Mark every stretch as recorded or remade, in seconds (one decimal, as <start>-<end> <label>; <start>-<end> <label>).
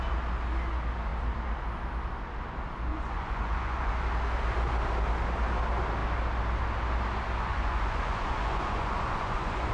0.0-2.9 recorded; 2.9-4.0 remade; 4.0-7.5 recorded; 7.5-9.7 remade